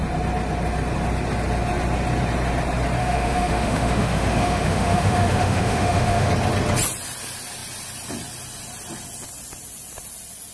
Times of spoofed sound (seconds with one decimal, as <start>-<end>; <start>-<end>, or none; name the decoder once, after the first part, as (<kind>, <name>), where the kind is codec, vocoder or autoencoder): 3.0-6.3 (autoencoder, DAC-VAE)